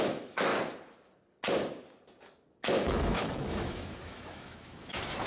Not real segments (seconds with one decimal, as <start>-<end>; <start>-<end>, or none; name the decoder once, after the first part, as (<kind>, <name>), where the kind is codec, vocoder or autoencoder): 0.0-0.5 (autoencoder, DAC-VAE); 2.6-5.3